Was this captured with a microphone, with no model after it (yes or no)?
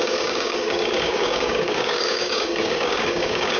no